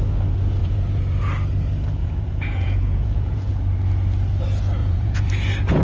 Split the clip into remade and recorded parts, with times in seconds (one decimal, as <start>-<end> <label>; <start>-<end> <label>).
0.0-0.6 recorded; 0.6-1.2 remade; 1.2-2.0 recorded; 2.0-3.5 remade; 3.5-4.8 recorded; 4.8-5.3 remade; 5.3-5.8 recorded